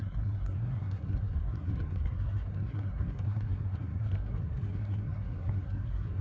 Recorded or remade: remade